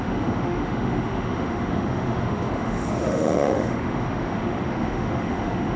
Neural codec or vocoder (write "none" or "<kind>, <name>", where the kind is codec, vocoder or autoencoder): autoencoder, DAC-VAE